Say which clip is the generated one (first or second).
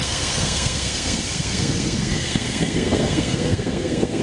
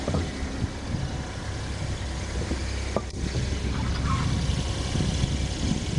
first